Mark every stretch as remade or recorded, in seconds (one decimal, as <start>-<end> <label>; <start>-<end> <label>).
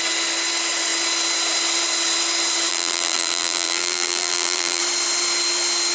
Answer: 0.0-2.7 recorded; 2.7-4.8 remade; 4.8-5.9 recorded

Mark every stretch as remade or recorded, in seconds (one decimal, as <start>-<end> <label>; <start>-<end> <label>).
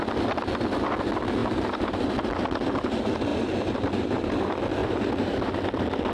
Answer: 0.0-1.4 recorded; 1.4-2.1 remade; 2.1-3.3 recorded; 3.3-4.3 remade; 4.3-4.8 recorded; 4.8-5.5 remade; 5.5-6.1 recorded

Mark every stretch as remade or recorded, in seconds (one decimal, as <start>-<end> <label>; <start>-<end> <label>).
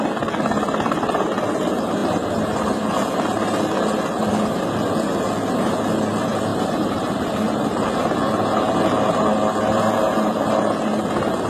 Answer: 0.0-6.5 recorded; 6.5-7.3 remade; 7.3-11.5 recorded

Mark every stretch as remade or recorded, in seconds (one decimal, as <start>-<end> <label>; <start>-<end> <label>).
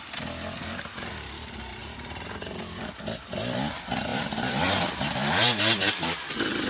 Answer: 0.0-1.8 recorded; 1.8-2.8 remade; 2.8-4.1 recorded; 4.1-6.2 remade; 6.2-6.7 recorded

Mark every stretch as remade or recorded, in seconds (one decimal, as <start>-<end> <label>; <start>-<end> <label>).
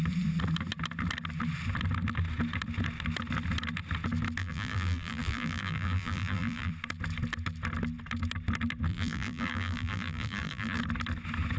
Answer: 0.0-4.4 recorded; 4.4-6.7 remade; 6.7-8.9 recorded; 8.9-10.8 remade; 10.8-11.6 recorded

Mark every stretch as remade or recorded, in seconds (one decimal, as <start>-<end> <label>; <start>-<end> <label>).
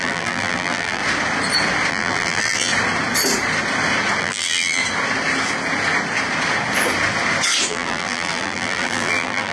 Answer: 0.0-1.0 remade; 1.0-1.9 recorded; 1.9-2.7 remade; 2.7-4.2 recorded; 4.2-4.8 remade; 4.8-7.7 recorded; 7.7-9.5 remade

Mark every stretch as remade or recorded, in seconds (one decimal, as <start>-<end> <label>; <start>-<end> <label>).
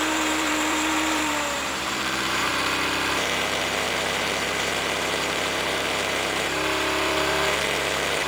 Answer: 0.0-2.5 remade; 2.5-3.1 recorded; 3.1-8.3 remade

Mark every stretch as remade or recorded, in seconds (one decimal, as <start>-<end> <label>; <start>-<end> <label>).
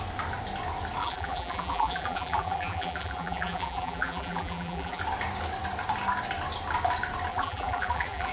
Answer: 0.0-1.0 recorded; 1.0-5.0 remade; 5.0-7.3 recorded; 7.3-8.3 remade